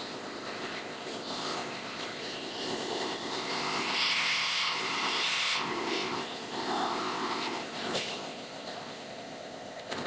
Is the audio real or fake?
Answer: fake